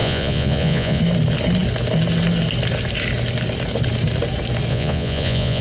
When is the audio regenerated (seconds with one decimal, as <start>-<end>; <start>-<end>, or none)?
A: 0.0-1.0; 4.7-5.6

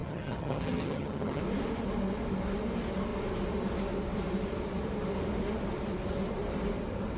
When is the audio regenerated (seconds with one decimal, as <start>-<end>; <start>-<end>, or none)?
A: 0.0-1.4

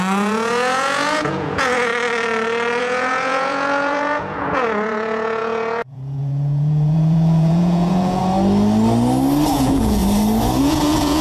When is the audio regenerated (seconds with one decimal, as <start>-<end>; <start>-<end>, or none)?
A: 0.0-1.9; 2.8-8.2; 9.5-10.0; 10.6-11.2

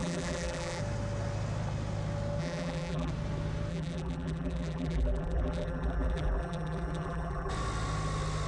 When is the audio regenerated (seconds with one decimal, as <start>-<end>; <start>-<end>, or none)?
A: 0.0-0.8; 2.4-3.1; 3.7-7.5